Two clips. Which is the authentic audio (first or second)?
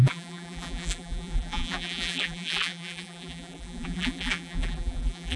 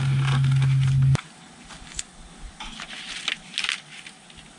second